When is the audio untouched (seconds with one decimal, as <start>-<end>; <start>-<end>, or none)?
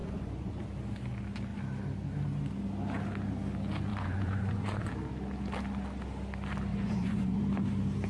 0.6-3.9; 4.9-6.7; 7.4-8.1